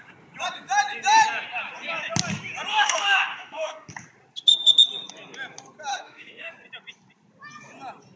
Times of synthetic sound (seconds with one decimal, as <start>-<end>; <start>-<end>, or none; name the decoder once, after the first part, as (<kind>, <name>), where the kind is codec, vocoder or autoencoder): 2.7-3.9 (autoencoder, DAC-VAE); 5.9-6.5

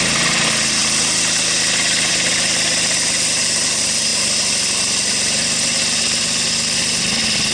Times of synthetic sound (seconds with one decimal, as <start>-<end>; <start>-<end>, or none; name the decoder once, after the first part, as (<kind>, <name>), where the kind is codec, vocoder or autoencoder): none

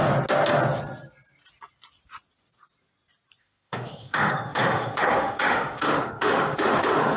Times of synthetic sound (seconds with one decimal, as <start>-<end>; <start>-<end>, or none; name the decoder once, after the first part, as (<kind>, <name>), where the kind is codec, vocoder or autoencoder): 3.4-7.2 (autoencoder, DAC-VAE)